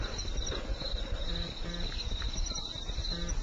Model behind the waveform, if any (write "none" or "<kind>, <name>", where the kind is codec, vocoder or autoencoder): none